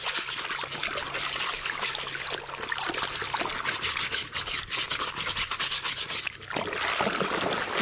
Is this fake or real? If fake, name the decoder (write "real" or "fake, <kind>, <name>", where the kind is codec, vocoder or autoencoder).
real